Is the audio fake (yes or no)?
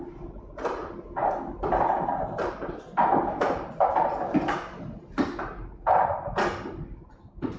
no